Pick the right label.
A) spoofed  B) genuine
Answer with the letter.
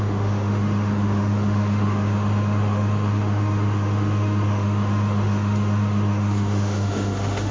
A